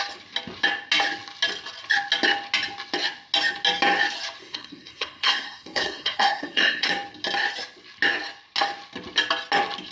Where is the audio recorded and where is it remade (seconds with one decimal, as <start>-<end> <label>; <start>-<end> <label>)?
0.0-4.4 recorded; 4.4-6.9 remade; 6.9-9.9 recorded